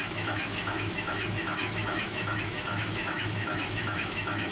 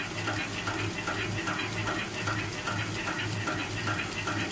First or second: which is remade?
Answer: first